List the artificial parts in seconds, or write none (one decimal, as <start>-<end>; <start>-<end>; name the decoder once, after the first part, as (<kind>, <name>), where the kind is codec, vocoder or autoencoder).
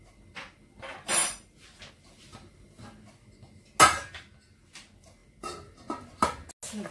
none